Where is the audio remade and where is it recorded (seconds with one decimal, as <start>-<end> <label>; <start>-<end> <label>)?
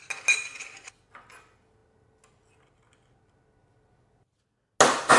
0.0-5.2 recorded